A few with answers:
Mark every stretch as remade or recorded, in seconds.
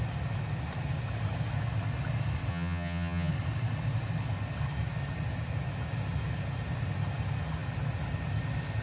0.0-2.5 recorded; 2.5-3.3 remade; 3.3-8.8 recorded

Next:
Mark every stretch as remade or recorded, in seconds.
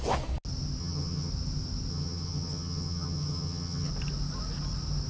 0.0-0.8 recorded; 0.8-1.3 remade; 1.3-1.9 recorded; 1.9-3.9 remade; 3.9-5.1 recorded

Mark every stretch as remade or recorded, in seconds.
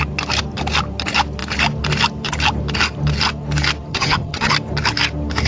0.0-3.9 recorded; 3.9-4.5 remade; 4.5-5.5 recorded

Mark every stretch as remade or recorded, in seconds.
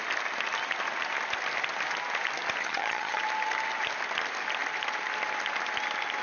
0.0-2.6 recorded; 2.6-3.2 remade; 3.2-6.2 recorded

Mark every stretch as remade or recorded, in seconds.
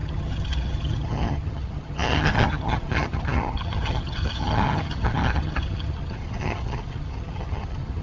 0.0-8.0 remade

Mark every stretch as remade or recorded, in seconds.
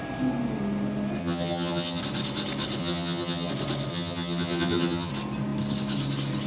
0.0-1.2 recorded; 1.2-2.0 remade; 2.0-2.8 recorded; 2.8-3.5 remade; 3.5-3.9 recorded; 3.9-5.1 remade; 5.1-6.5 recorded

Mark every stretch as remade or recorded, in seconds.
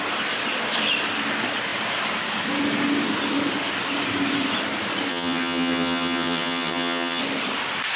0.0-5.1 recorded; 5.1-7.2 remade; 7.2-8.0 recorded